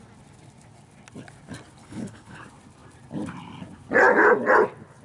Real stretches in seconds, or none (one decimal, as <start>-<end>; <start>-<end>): 0.0-1.8; 2.4-5.0